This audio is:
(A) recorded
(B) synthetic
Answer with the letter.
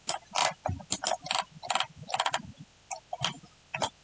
A